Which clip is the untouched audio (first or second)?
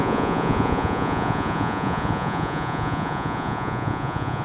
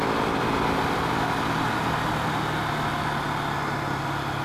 second